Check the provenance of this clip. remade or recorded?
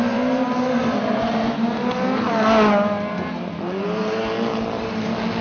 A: recorded